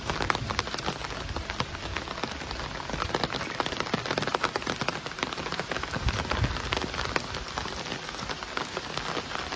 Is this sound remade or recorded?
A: recorded